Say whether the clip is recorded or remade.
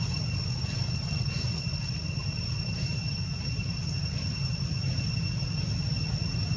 recorded